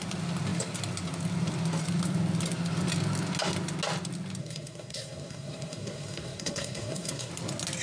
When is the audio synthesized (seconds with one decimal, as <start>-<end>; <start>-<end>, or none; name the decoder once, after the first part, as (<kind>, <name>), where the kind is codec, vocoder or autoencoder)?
4.4-7.3 (codec, SNAC)